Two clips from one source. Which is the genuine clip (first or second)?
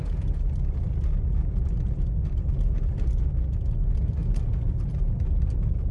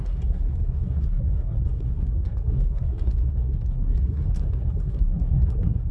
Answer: first